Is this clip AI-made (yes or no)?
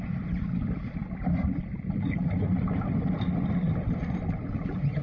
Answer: no